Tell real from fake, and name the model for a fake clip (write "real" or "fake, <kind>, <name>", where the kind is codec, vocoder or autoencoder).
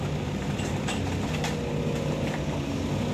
real